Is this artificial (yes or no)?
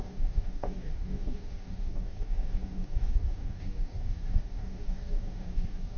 yes